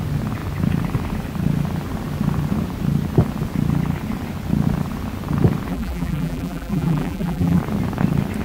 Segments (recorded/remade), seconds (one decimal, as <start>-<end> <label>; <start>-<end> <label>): 0.0-5.7 recorded; 5.7-7.6 remade; 7.6-8.4 recorded